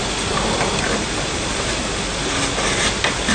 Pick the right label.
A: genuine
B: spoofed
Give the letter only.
A